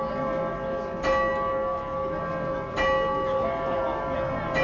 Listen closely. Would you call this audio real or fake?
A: real